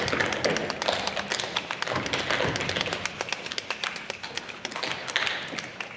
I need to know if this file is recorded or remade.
recorded